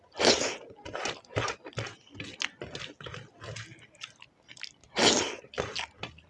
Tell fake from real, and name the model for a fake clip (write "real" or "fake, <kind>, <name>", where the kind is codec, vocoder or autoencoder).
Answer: real